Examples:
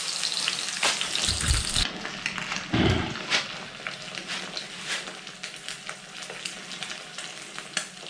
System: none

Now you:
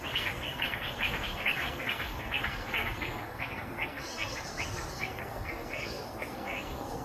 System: codec, SNAC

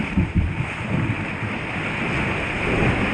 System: none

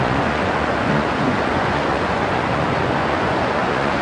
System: vocoder, Vocos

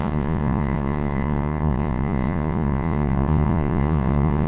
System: vocoder, Vocos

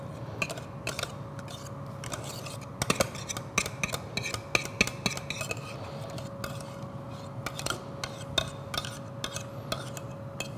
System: none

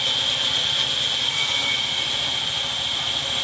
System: none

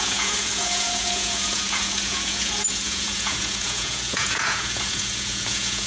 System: vocoder, Vocos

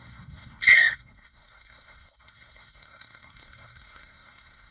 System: codec, SNAC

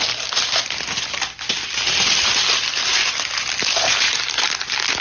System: none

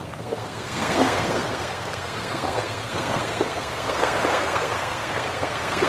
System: codec, SNAC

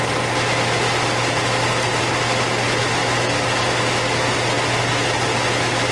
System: none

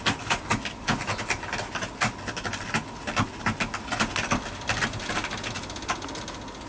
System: none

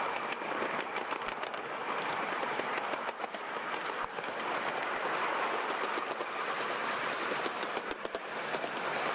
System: none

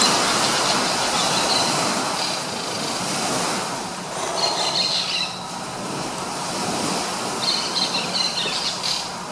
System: none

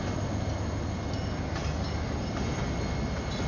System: none